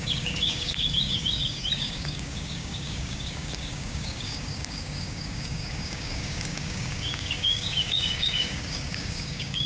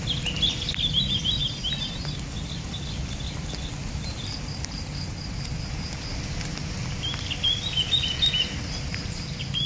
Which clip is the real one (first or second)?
second